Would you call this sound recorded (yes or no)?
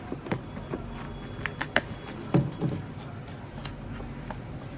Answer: yes